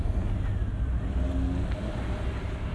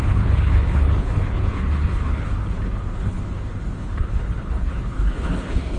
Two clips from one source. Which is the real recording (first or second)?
first